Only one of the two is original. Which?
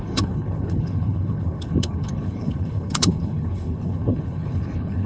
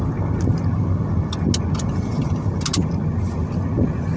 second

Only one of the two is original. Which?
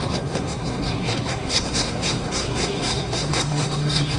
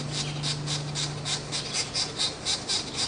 second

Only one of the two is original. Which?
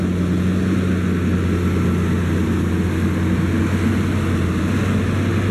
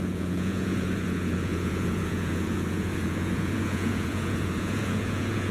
first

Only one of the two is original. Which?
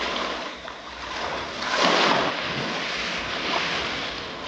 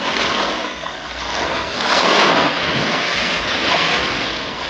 first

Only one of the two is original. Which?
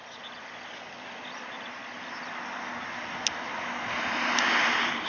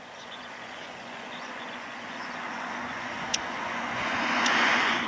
first